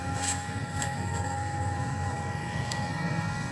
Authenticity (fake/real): fake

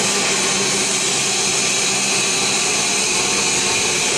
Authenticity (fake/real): real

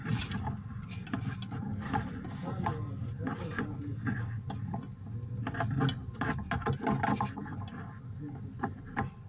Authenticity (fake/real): real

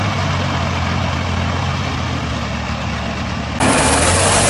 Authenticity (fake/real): real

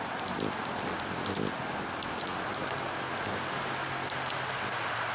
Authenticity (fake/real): real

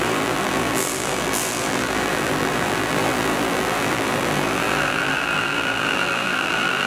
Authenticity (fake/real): fake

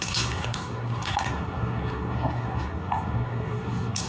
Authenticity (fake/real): fake